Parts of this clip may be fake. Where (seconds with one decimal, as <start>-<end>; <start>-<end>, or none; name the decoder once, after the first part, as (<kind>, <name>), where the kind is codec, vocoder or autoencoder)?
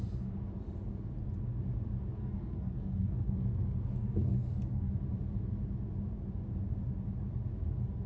2.2-4.9 (codec, SNAC)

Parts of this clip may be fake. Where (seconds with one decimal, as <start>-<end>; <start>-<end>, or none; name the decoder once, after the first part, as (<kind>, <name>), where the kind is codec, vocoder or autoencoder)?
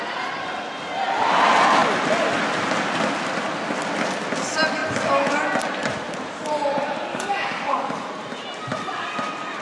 7.1-8.1 (codec, DAC)